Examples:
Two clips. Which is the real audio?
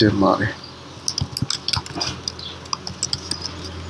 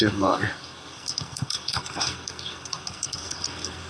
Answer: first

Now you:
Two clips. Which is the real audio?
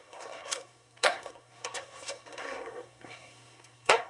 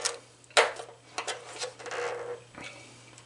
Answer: second